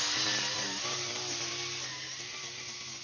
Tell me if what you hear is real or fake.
real